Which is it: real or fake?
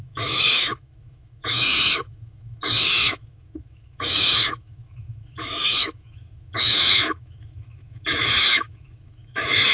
fake